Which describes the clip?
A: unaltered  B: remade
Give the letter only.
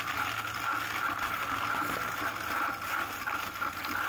A